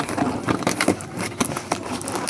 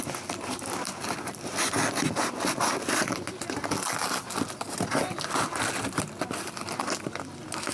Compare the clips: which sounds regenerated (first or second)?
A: first